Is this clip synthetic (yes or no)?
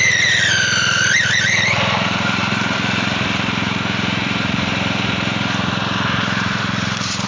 yes